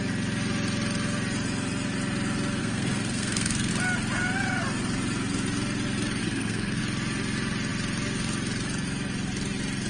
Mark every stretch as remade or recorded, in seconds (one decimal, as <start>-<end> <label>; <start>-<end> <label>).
0.0-2.6 recorded; 2.6-3.7 remade; 3.7-6.2 recorded; 6.2-6.8 remade; 6.8-9.9 recorded